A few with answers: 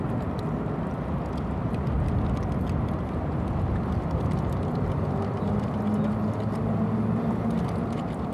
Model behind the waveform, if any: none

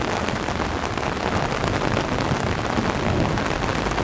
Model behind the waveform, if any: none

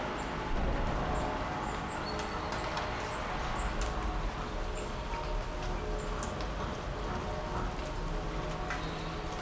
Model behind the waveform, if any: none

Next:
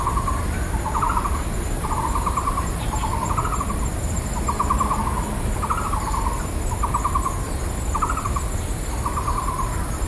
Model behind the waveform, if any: none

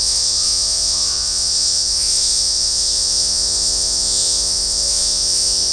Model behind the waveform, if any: vocoder, Vocos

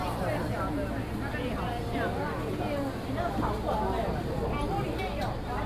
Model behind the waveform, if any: none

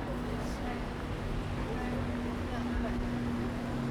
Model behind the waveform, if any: none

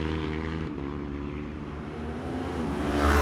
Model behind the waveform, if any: vocoder, BigVGAN v2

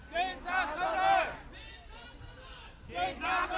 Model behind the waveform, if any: none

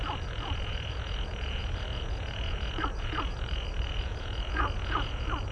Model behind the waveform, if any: vocoder, Vocos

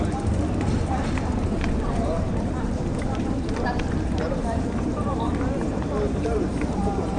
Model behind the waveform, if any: vocoder, BigVGAN v2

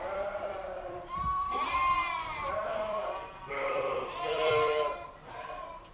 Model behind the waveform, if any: vocoder, BigVGAN v2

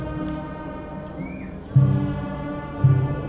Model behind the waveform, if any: none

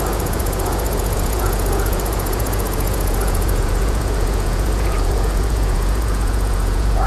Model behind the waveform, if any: vocoder, Vocos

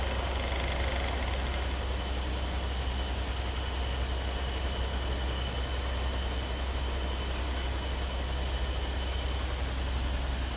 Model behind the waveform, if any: none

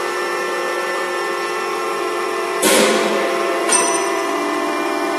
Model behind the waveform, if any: vocoder, BigVGAN v2